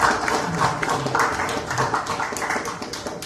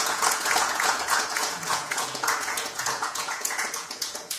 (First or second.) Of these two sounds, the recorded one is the first